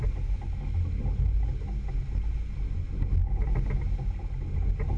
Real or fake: real